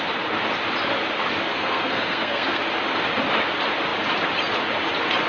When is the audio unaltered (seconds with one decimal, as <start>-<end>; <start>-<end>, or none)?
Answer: 0.0-1.5; 2.6-5.3